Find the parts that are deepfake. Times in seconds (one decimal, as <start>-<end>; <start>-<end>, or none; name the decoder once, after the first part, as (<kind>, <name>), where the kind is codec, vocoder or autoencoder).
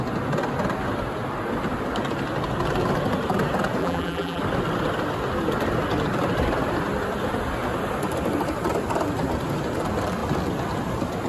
3.8-4.4 (vocoder, BigVGAN v2)